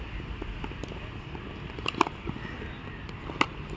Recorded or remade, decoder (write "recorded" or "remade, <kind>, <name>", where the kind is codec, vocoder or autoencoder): recorded